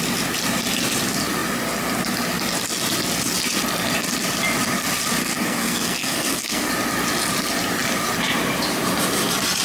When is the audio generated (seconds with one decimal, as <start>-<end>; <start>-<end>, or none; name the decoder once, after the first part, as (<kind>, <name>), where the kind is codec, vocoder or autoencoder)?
5.2-6.7 (codec, SNAC)